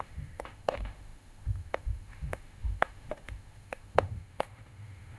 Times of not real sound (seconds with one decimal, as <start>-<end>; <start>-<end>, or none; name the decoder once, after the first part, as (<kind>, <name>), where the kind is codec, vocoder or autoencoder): 0.0-5.2 (autoencoder, DAC-VAE)